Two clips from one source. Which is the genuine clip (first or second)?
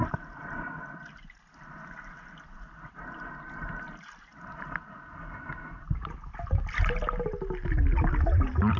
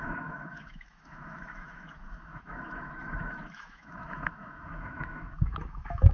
first